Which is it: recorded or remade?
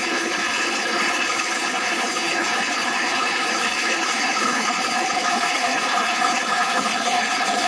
remade